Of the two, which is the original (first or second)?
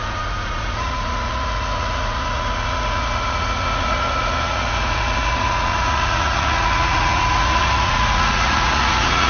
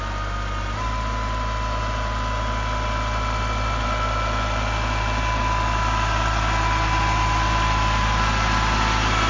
second